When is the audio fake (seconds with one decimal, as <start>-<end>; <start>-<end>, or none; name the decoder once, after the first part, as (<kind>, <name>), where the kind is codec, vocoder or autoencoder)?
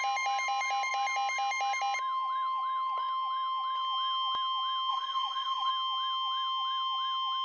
4.9-5.7 (vocoder, Vocos)